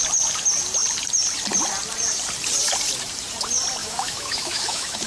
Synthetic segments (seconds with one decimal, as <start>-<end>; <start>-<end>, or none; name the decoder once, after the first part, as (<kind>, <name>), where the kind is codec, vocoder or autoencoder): 3.8-5.1 (autoencoder, DAC-VAE)